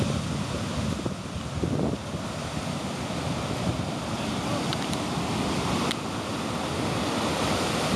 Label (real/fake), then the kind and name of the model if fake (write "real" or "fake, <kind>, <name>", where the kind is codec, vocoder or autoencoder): real